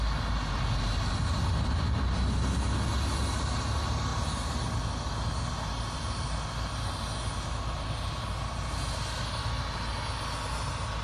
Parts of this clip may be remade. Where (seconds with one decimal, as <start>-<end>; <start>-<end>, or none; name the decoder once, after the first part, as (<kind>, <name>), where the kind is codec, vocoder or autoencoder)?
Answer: none